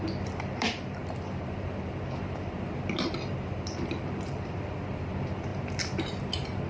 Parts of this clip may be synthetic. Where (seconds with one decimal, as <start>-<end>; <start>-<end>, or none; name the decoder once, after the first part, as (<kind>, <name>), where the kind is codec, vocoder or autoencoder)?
0.0-5.5 (vocoder, BigVGAN v2); 6.3-6.7

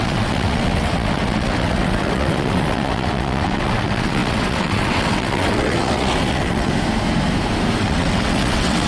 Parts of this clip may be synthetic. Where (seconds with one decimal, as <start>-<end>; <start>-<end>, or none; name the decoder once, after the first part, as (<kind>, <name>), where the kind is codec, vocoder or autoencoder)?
0.0-6.7 (vocoder, WaveNeXt); 7.8-8.9

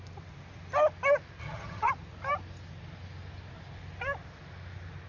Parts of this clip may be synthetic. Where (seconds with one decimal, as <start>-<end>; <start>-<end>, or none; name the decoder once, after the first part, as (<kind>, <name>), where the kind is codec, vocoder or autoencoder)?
1.4-1.9 (vocoder, HiFi-GAN)

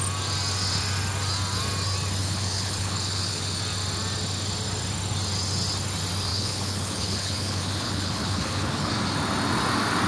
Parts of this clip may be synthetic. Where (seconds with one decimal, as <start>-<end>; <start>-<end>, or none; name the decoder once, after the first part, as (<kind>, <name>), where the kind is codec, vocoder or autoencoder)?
2.2-3.6 (codec, HILCodec); 6.3-8.9

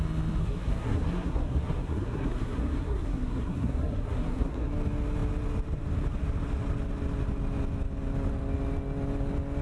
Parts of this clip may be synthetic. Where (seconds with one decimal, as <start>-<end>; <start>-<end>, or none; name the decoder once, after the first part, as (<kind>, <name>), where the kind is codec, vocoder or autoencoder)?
0.4-4.7 (codec, SNAC)

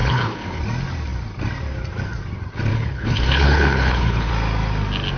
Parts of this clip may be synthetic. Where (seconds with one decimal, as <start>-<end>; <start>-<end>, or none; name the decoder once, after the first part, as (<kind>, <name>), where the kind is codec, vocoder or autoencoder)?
0.0-0.6 (codec, HILCodec); 2.7-4.3

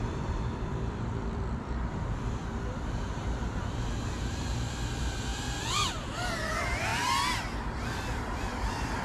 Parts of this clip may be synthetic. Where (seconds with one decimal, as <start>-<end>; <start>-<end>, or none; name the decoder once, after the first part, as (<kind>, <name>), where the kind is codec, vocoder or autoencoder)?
0.0-2.4 (vocoder, BigVGAN v2); 4.2-5.3; 5.9-9.0